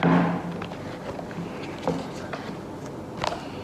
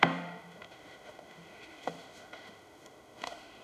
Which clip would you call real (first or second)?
first